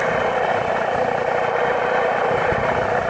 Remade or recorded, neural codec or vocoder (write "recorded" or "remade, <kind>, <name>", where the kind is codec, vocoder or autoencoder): recorded